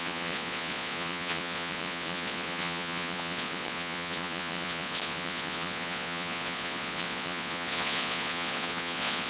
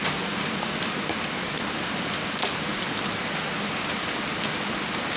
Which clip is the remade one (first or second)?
first